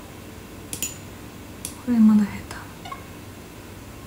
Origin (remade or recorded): recorded